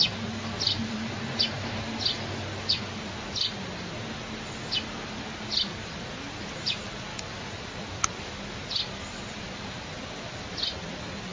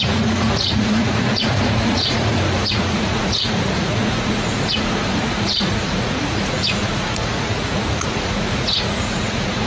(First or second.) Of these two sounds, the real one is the first